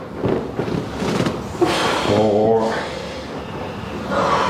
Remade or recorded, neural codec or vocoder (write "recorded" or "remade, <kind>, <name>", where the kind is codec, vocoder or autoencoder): recorded